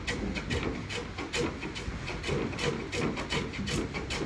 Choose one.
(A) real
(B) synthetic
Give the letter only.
A